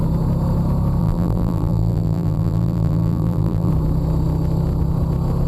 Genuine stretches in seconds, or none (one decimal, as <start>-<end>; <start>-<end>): 0.0-1.0; 3.7-5.5